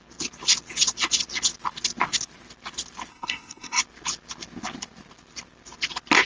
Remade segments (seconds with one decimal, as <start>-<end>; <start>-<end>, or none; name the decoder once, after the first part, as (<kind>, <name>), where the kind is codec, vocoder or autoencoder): 3.1-3.8 (codec, SNAC)